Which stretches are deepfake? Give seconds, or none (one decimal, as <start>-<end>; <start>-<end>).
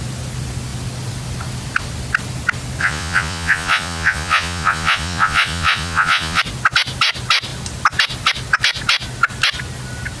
2.8-6.4